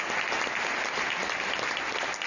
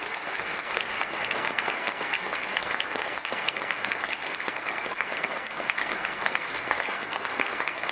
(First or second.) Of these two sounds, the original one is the first